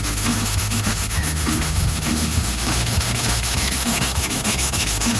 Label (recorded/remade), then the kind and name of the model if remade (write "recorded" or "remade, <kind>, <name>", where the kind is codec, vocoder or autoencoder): remade, autoencoder, DAC-VAE